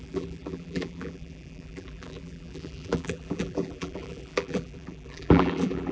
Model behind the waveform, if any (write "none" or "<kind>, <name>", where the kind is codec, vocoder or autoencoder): vocoder, BigVGAN v2